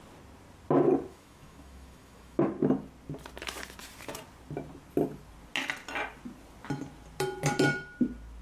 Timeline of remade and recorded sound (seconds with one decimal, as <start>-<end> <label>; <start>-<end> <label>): 0.0-1.1 recorded; 1.1-2.5 remade; 2.5-8.4 recorded